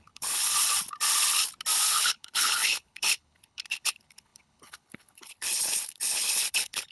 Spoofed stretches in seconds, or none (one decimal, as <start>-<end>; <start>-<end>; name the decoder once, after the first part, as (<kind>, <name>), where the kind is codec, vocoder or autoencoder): 0.0-0.4 (codec, HILCodec); 1.9-6.9